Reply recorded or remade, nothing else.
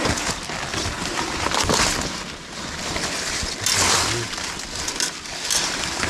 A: recorded